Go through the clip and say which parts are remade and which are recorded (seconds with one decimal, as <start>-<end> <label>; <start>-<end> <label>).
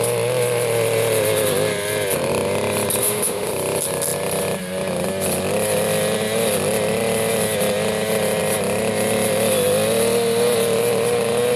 0.0-3.0 recorded; 3.0-3.5 remade; 3.5-11.6 recorded